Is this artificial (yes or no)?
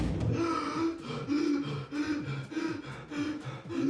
no